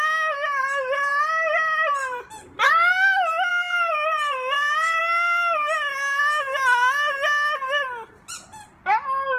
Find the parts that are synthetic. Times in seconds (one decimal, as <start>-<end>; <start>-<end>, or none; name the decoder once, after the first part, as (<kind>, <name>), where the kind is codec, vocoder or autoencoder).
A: 2.0-2.9 (vocoder, BigVGAN v2); 3.5-5.0